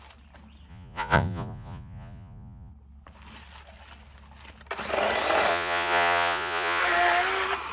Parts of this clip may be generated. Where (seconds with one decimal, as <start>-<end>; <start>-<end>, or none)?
0.7-2.7; 5.5-6.8